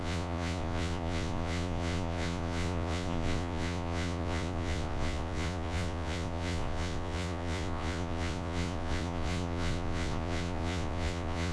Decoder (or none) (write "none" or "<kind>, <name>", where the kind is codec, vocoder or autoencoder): vocoder, Vocos